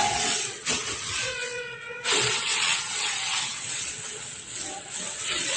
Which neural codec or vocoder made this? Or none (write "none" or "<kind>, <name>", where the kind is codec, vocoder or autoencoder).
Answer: vocoder, WaveNeXt